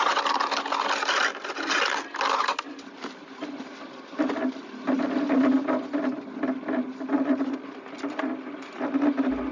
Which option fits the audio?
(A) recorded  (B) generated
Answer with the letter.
A